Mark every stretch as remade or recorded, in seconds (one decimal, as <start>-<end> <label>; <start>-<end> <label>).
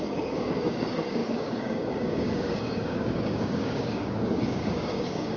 0.0-5.4 remade